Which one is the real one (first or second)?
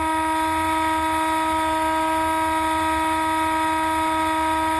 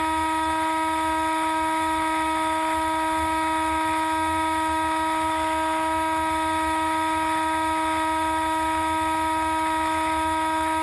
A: first